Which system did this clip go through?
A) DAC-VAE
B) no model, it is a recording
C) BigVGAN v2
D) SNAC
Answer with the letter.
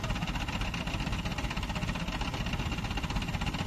B